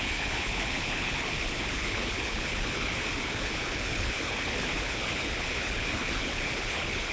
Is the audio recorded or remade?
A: remade